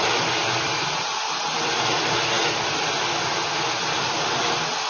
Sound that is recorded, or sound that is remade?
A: recorded